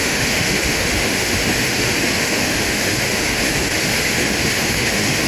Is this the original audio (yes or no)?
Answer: no